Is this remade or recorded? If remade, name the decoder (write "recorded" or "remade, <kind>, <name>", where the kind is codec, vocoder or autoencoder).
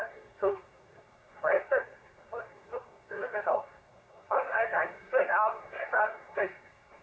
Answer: remade, codec, SNAC